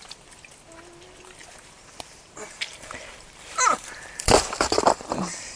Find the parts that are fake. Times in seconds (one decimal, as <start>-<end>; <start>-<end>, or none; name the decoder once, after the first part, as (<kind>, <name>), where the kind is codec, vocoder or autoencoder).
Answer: 2.7-5.6 (vocoder, BigVGAN v2)